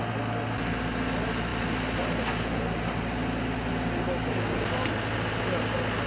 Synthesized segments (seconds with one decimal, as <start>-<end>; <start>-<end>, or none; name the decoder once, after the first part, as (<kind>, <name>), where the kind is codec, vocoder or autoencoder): none